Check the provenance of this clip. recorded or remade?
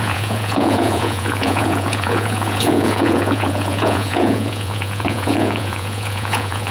remade